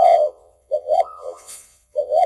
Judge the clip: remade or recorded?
remade